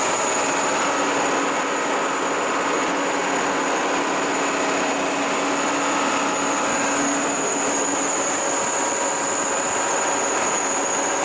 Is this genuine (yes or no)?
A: yes